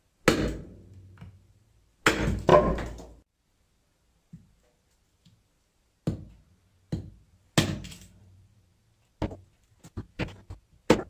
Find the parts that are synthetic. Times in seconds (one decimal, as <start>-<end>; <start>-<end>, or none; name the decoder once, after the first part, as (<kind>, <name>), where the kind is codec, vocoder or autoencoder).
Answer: none